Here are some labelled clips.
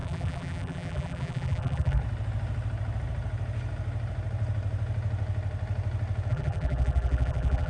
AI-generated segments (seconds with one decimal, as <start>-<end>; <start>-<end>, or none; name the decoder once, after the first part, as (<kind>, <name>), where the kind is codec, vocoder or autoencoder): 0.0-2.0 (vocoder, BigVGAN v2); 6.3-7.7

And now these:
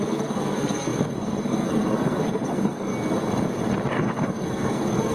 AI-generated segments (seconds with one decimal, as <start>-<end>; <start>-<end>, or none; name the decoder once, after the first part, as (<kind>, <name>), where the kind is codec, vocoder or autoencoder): 0.0-2.9 (codec, SNAC); 3.9-5.1

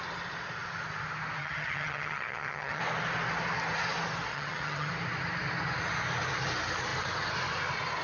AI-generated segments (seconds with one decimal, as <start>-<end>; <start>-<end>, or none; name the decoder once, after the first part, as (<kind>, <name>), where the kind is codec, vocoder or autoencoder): 1.4-2.8 (vocoder, HiFi-GAN); 4.3-4.9

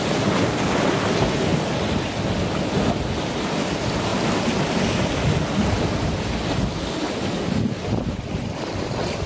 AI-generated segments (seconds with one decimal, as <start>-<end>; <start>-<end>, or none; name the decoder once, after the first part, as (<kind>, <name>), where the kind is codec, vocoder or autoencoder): none